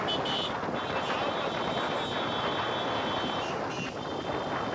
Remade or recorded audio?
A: recorded